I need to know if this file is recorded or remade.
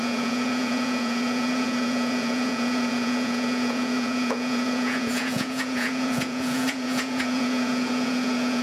remade